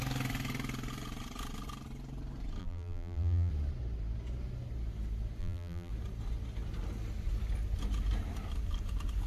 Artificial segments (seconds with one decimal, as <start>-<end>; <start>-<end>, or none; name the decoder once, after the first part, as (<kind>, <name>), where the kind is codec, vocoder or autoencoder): 2.6-3.5 (vocoder, BigVGAN v2); 5.4-5.9